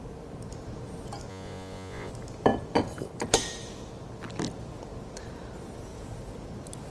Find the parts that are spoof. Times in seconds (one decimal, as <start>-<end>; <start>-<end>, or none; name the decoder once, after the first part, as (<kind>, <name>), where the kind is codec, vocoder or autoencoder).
1.3-2.1 (vocoder, Vocos)